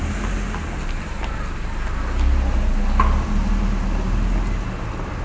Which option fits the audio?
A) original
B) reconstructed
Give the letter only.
A